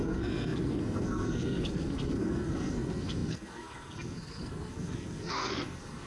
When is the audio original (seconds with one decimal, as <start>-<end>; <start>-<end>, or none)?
none